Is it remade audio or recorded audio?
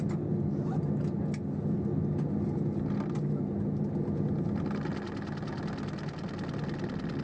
recorded